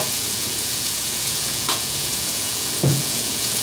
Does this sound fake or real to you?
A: fake